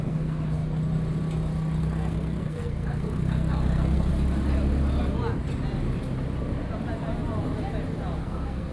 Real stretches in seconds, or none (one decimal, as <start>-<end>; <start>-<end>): 0.6-1.8; 4.1-8.2